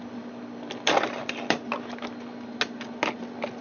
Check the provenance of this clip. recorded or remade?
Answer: recorded